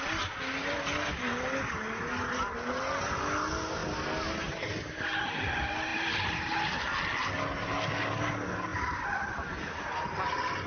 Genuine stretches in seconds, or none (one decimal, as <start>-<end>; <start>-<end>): 0.0-10.7